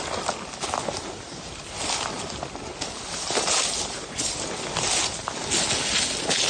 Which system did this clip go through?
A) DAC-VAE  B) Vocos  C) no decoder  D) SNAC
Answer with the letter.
C